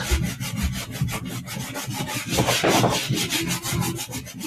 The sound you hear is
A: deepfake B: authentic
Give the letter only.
B